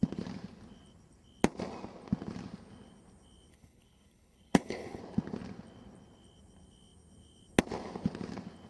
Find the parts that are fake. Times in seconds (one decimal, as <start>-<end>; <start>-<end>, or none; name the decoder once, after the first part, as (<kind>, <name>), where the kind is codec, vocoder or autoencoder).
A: 3.5-5.0 (codec, HILCodec)